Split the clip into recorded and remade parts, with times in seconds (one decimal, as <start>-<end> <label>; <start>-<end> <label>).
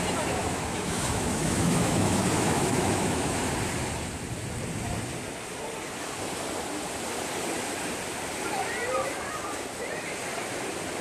0.0-0.4 recorded; 0.4-3.4 remade; 3.4-11.0 recorded